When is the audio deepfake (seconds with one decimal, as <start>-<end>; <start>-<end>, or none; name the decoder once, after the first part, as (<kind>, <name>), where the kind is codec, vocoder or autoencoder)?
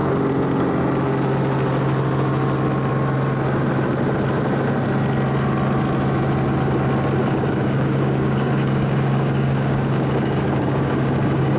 7.2-11.6 (codec, DAC)